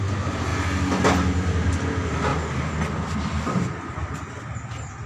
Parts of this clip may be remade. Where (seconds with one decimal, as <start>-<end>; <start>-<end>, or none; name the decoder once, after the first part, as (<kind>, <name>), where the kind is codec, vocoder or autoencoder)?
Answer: 2.3-4.3 (vocoder, BigVGAN v2)